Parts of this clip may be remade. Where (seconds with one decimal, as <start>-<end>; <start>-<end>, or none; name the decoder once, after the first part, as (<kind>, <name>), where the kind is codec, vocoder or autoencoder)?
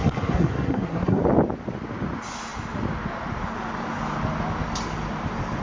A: 0.0-1.2 (codec, SNAC)